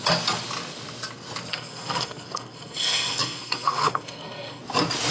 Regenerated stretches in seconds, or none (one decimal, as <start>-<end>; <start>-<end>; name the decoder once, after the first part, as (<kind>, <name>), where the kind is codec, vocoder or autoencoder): 1.5-4.6 (codec, SNAC)